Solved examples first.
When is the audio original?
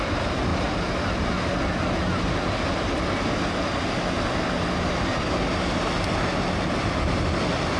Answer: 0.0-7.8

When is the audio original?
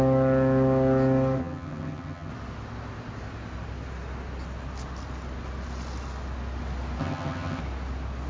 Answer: 0.0-1.4; 2.3-7.0; 7.6-8.3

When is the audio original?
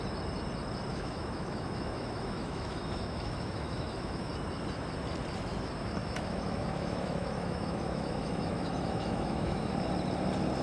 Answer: 0.0-0.9; 4.3-6.0; 9.7-10.6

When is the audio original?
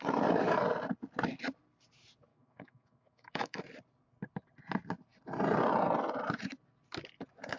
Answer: 0.0-2.3; 3.6-7.6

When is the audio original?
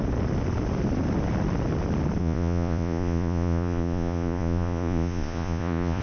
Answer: 0.0-2.2